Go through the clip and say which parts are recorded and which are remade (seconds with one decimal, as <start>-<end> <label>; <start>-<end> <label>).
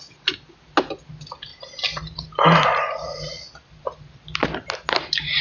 0.0-5.4 recorded